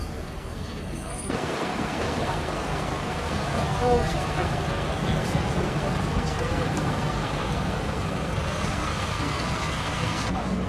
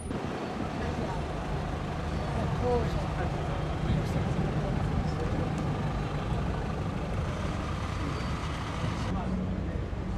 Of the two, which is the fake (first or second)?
first